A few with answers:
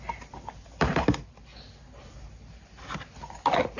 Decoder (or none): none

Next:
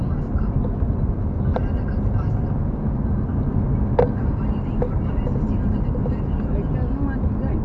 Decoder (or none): none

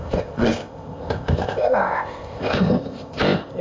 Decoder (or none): codec, ZipCodec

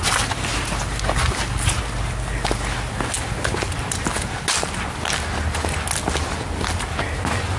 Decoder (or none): none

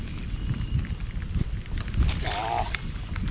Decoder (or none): none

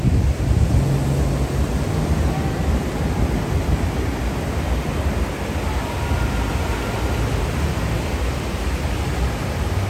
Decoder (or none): none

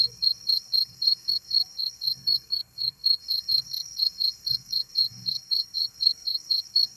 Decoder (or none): codec, SNAC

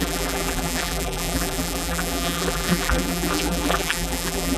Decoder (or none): vocoder, BigVGAN v2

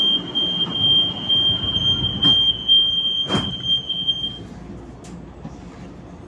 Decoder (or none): none